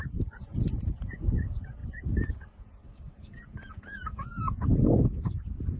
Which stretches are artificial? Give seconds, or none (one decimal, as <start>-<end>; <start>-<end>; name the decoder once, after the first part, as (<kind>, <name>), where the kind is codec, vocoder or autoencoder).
0.0-1.8 (vocoder, Vocos); 2.3-5.8